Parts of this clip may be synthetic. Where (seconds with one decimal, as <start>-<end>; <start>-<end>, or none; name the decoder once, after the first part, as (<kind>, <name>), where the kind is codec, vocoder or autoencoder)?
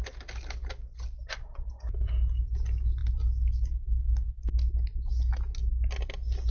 none